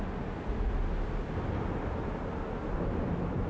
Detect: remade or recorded recorded